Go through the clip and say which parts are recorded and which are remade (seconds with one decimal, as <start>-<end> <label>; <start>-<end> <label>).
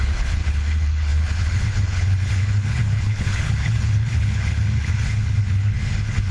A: 0.0-6.3 remade